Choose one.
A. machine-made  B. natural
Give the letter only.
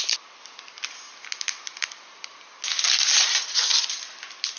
B